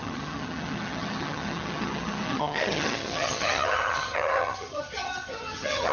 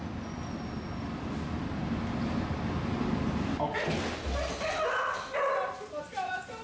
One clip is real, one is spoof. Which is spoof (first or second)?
first